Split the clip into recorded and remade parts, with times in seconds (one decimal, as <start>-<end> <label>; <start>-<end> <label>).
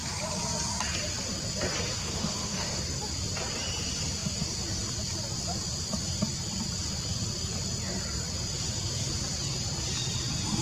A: 0.0-2.0 recorded; 2.0-2.8 remade; 2.8-10.6 recorded